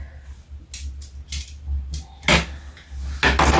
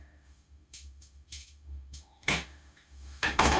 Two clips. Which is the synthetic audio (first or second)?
second